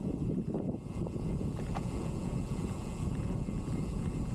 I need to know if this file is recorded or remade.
remade